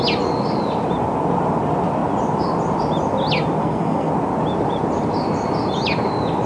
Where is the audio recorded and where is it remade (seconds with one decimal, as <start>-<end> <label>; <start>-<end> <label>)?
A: 0.0-3.6 recorded; 3.6-4.1 remade; 4.1-6.5 recorded